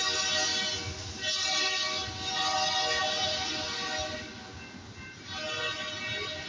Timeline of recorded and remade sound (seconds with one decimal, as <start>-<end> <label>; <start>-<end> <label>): 0.0-6.5 recorded